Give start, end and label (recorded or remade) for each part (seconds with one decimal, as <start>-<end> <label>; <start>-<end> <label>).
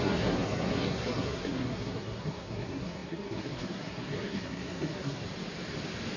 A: 0.0-5.2 remade; 5.2-6.2 recorded